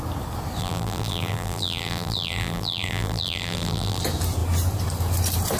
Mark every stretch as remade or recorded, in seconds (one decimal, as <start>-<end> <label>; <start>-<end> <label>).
0.0-0.6 recorded; 0.6-4.0 remade; 4.0-5.6 recorded